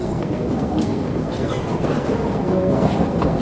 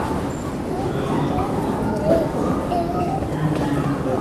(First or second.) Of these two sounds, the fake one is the first